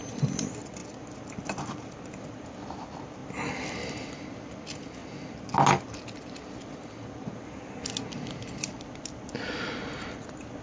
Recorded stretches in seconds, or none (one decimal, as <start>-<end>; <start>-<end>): 0.0-10.6